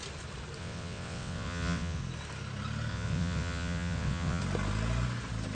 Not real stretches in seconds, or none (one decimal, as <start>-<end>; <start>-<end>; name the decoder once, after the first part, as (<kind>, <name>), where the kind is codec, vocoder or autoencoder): 0.6-2.0 (vocoder, WaveNeXt); 2.9-4.4